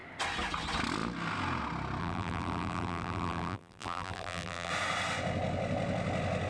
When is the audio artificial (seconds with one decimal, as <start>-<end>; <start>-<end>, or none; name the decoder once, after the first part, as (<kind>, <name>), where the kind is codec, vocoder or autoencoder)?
2.0-4.7 (vocoder, BigVGAN v2)